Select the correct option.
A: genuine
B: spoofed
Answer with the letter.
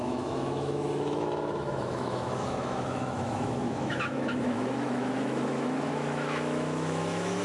B